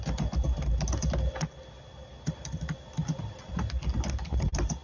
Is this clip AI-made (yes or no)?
no